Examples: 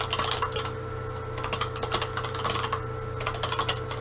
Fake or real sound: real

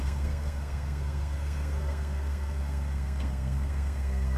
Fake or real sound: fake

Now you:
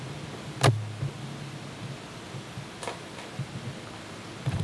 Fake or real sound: real